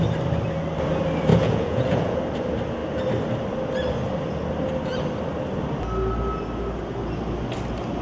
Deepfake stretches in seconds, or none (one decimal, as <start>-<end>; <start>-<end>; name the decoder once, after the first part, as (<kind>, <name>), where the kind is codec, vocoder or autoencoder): 1.3-2.2 (vocoder, Vocos)